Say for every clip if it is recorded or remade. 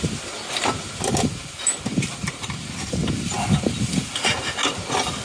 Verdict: recorded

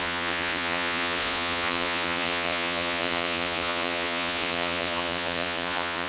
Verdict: remade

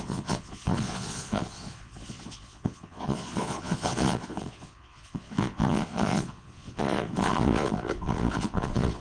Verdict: remade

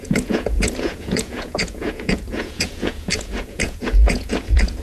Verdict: remade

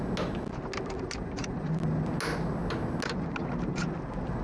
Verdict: recorded